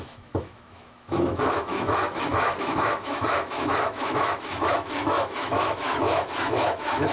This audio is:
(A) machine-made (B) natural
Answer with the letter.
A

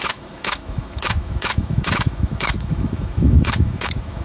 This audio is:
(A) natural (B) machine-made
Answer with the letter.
B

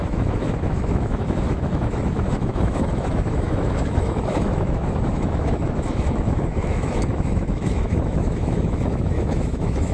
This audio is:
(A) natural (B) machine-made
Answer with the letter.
B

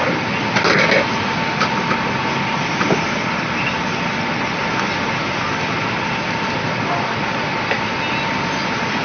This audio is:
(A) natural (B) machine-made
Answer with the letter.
A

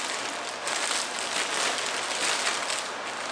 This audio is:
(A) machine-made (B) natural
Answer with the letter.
B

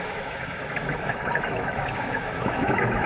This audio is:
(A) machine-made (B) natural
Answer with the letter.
A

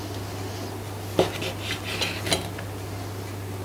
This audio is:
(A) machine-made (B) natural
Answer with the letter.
B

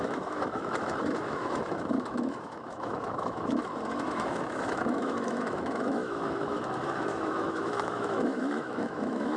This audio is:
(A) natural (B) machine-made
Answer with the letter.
B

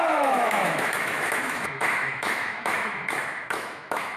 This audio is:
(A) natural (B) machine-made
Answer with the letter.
B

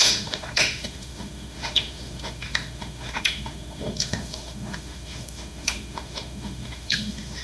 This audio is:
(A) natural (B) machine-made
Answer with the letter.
B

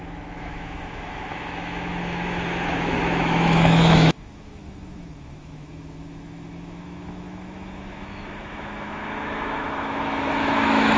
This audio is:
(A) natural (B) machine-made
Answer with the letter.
B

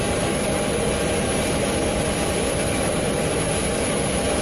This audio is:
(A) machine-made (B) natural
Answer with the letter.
B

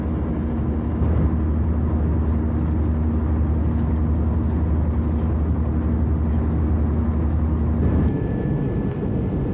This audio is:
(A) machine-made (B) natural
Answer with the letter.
B